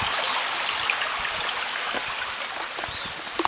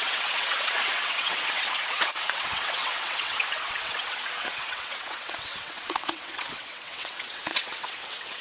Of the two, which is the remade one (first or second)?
second